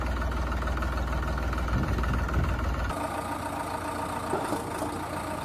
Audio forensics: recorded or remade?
recorded